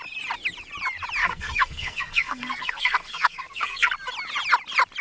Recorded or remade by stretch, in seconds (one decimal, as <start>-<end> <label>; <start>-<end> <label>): 0.0-1.2 recorded; 1.2-3.9 remade; 3.9-5.0 recorded